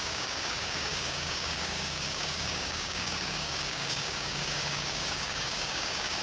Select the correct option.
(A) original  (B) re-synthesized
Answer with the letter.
B